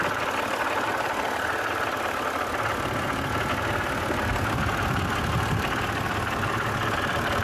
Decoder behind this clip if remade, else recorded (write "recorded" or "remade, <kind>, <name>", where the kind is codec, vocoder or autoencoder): recorded